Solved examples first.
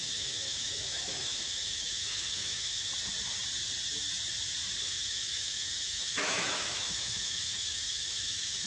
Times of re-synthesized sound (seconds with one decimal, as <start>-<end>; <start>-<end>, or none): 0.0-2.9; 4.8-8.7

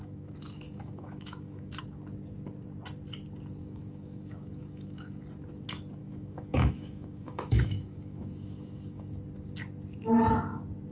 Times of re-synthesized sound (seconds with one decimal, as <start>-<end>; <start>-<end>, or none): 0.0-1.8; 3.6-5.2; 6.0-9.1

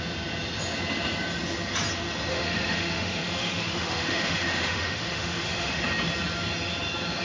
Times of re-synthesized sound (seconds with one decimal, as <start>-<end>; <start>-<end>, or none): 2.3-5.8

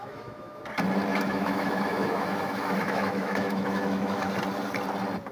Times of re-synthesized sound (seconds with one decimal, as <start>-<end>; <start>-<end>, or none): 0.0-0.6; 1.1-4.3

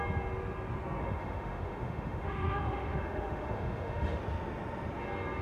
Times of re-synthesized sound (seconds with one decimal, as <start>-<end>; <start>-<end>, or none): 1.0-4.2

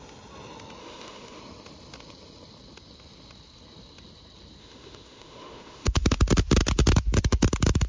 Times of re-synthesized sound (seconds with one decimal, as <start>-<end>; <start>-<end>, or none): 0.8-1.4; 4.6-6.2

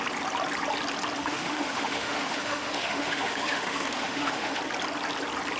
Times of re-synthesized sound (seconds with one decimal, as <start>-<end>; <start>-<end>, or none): 1.2-4.6

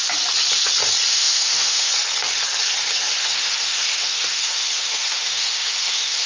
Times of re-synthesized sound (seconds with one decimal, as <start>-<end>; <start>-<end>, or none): 1.1-1.9; 3.2-6.3